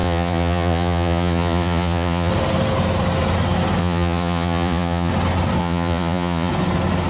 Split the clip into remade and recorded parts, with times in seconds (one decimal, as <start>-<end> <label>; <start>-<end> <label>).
0.0-2.3 remade; 2.3-3.8 recorded; 3.8-5.1 remade; 5.1-5.6 recorded; 5.6-6.5 remade; 6.5-7.1 recorded